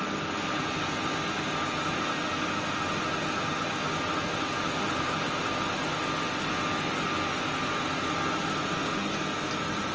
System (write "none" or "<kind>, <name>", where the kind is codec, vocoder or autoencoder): none